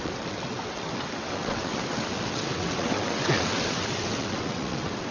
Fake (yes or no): yes